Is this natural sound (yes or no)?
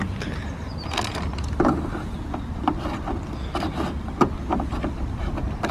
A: yes